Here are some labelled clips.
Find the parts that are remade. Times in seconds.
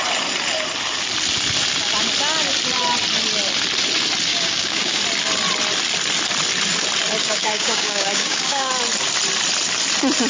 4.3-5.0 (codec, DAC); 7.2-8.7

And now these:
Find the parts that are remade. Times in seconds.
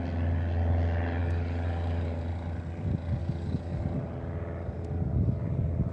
1.2-2.2 (codec, DAC); 3.2-3.8